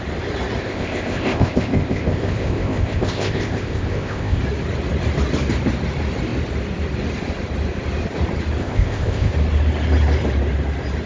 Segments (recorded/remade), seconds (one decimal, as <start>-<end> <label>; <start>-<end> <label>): 0.0-0.6 recorded; 0.6-4.4 remade; 4.4-8.6 recorded; 8.6-9.3 remade; 9.3-11.1 recorded